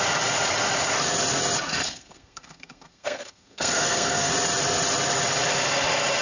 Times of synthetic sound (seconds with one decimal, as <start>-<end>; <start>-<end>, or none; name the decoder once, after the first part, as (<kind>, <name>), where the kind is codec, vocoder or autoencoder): 1.8-4.3 (codec, SNAC)